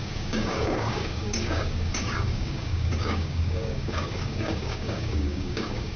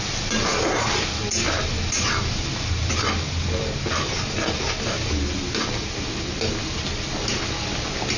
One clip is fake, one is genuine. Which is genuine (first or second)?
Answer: second